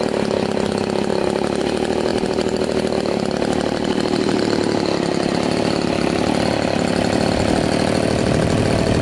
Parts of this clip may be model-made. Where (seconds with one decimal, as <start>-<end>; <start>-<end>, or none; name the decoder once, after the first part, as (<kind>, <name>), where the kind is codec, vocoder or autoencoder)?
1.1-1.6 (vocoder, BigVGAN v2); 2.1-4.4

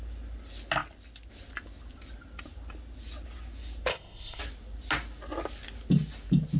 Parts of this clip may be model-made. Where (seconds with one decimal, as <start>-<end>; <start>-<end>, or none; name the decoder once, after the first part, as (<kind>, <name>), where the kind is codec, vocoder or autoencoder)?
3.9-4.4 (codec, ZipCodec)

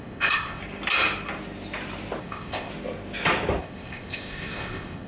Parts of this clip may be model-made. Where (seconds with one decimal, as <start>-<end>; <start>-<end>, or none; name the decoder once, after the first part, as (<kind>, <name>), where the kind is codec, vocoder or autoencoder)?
0.0-0.6 (codec, ZipCodec); 2.2-2.7; 3.6-5.1